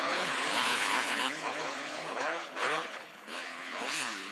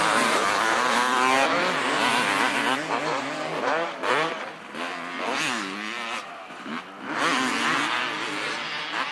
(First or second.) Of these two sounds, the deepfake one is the first